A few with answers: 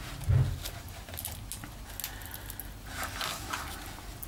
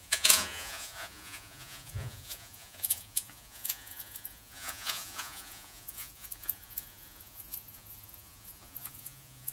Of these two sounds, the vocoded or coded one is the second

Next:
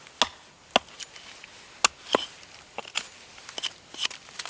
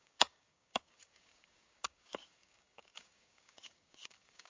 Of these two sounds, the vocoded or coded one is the second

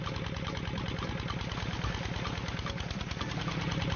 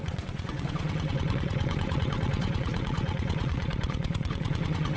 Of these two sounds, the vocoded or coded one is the second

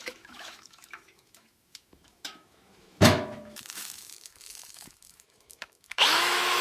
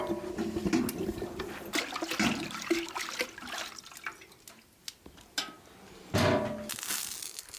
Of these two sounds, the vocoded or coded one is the first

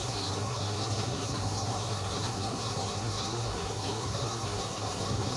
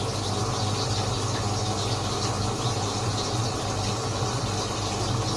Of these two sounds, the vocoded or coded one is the first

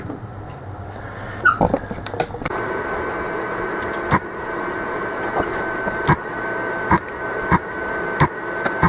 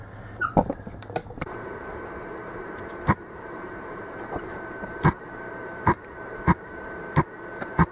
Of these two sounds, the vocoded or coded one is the second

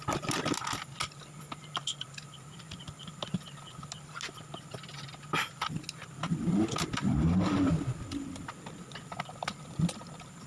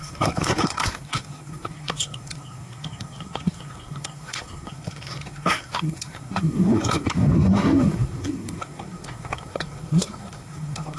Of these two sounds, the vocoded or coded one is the second